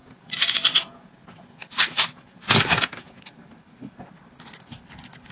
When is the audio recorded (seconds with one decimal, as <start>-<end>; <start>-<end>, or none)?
3.2-5.3